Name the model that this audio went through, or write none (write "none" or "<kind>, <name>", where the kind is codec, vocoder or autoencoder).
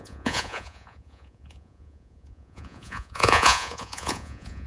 vocoder, Vocos